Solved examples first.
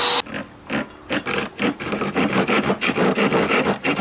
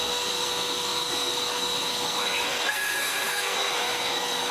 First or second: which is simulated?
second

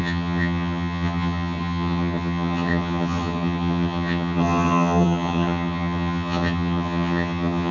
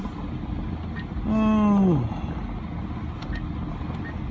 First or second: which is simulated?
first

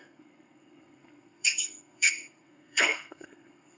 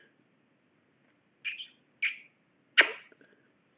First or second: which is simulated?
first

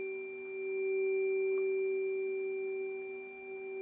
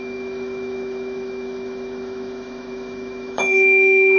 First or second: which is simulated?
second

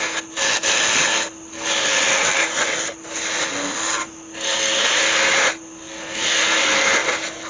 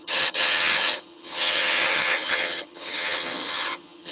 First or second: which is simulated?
second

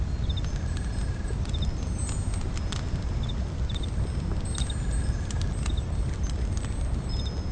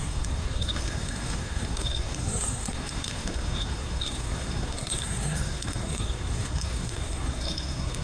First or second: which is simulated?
second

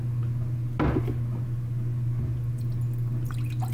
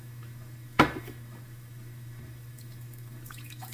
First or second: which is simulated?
second